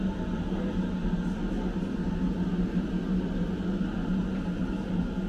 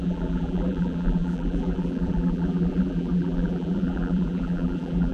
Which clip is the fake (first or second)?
second